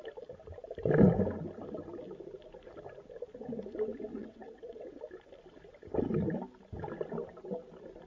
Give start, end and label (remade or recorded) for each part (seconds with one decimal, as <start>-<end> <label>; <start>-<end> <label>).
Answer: 0.0-4.2 recorded; 4.2-5.0 remade; 5.0-8.1 recorded